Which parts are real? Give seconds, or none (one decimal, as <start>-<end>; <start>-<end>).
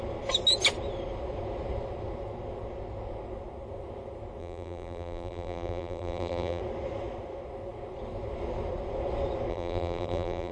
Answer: 0.0-4.4; 6.6-9.5